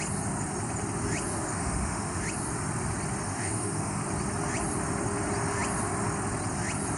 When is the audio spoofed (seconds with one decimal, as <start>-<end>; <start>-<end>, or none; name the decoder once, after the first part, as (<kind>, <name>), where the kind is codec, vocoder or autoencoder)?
1.5-2.2 (autoencoder, DAC-VAE); 3.3-4.0